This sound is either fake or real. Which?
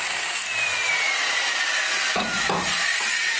real